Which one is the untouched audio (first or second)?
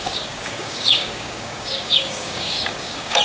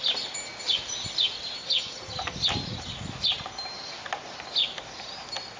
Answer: second